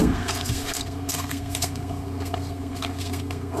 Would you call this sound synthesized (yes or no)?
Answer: yes